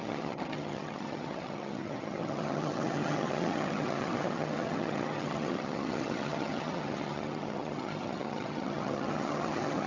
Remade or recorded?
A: remade